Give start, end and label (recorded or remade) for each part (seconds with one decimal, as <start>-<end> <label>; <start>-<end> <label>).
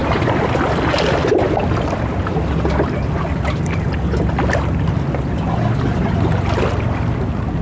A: 0.0-7.6 recorded